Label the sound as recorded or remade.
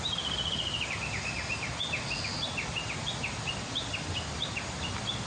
recorded